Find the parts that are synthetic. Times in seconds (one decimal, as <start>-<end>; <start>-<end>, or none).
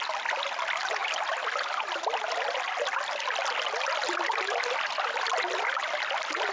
none